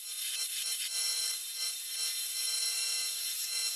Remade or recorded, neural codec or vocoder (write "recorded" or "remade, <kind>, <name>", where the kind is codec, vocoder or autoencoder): remade, vocoder, BigVGAN v2